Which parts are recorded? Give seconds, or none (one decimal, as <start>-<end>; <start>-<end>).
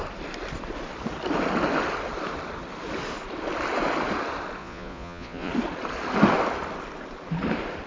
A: 0.0-4.6; 5.5-7.9